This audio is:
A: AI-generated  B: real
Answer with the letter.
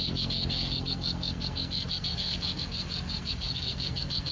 A